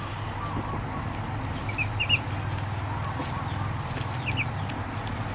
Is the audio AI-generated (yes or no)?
no